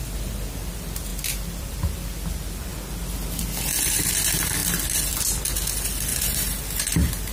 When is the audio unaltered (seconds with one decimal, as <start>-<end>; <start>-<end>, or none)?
0.0-1.1; 1.7-4.6; 5.4-7.3